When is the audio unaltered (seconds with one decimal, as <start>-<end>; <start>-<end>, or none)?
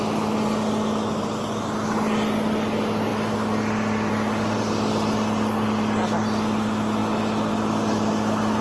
0.0-8.6